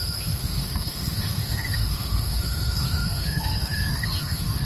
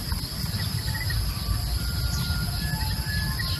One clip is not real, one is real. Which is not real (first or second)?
first